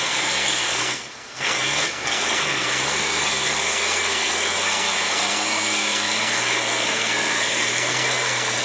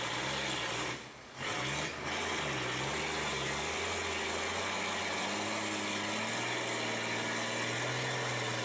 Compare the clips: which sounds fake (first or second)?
first